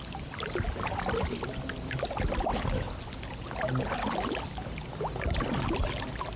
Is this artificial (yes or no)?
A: no